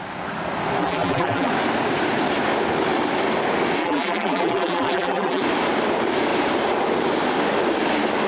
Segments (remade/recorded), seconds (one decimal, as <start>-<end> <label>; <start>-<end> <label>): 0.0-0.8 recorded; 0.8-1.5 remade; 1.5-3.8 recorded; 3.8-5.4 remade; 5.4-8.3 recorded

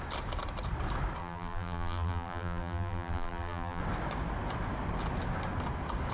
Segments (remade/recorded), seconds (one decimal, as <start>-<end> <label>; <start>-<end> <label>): 0.0-1.2 recorded; 1.2-3.8 remade; 3.8-6.1 recorded

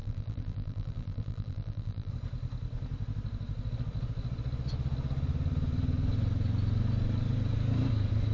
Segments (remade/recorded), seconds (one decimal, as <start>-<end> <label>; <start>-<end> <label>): 0.0-2.1 remade; 2.1-8.3 recorded